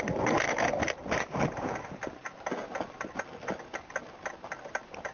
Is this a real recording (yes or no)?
yes